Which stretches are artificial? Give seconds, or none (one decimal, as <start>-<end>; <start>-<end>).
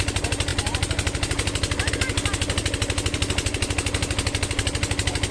none